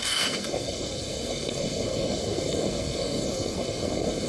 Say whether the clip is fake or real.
fake